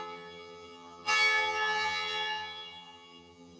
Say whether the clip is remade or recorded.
remade